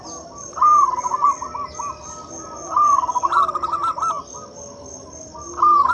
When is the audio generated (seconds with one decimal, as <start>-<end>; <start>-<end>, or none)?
none